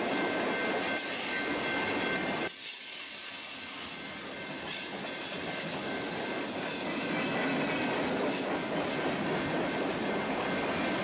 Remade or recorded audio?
recorded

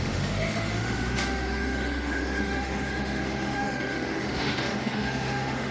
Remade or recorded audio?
remade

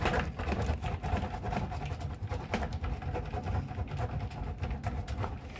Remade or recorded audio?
recorded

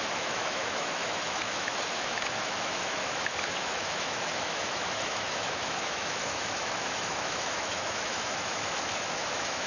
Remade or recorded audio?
remade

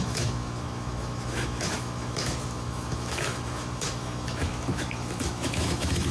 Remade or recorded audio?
remade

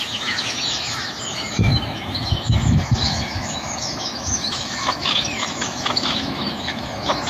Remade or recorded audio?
remade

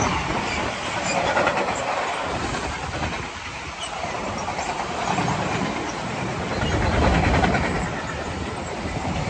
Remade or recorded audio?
recorded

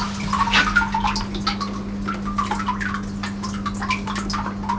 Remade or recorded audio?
recorded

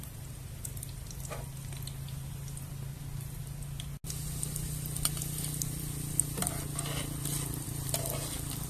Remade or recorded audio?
recorded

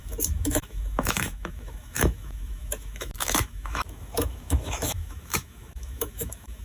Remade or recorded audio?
remade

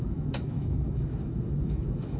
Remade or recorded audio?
remade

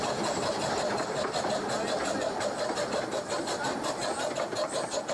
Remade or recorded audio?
recorded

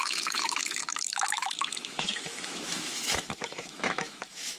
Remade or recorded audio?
remade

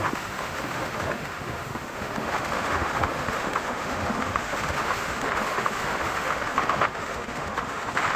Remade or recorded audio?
remade